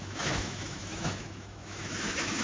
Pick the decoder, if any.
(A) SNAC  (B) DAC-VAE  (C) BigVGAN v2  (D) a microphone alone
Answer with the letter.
B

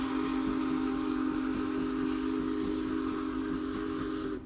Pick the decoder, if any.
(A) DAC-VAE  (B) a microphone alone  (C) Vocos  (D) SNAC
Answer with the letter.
B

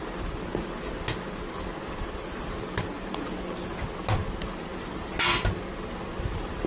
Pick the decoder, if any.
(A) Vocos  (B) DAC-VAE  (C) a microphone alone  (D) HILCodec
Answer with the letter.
C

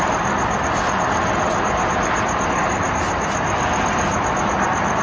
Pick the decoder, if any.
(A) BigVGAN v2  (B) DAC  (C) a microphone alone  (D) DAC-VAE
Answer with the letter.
C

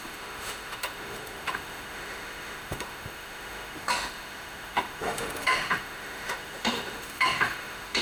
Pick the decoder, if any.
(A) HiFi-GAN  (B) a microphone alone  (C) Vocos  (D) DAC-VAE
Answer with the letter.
D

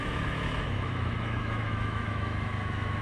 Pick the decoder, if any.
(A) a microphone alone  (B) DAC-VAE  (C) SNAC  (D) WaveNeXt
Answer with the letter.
B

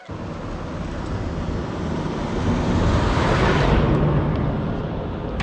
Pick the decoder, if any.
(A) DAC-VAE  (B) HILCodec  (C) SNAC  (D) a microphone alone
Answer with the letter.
D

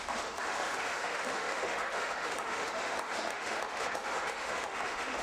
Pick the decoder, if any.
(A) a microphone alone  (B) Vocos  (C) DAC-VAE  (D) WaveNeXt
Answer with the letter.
C